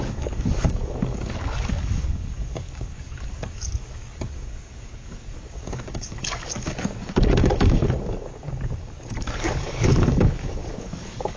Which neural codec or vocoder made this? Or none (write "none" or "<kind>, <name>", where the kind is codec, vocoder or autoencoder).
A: codec, DAC